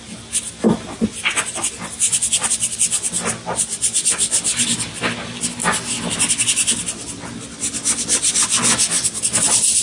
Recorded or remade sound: recorded